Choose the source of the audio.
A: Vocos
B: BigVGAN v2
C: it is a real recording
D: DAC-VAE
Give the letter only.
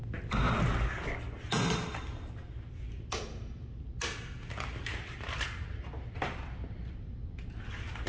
C